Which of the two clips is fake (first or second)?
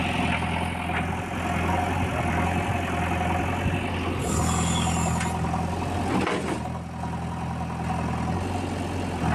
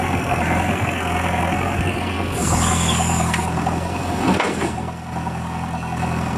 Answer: second